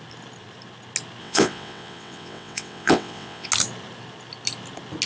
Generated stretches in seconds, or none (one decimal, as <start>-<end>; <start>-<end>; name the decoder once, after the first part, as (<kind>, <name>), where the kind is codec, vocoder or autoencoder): 1.2-3.5 (vocoder, WaveNeXt)